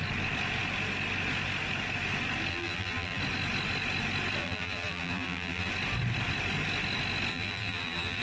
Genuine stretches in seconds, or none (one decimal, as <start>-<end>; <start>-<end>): 0.0-2.5; 3.2-4.4; 5.7-7.3